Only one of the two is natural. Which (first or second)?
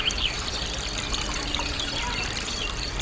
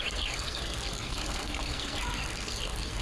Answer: first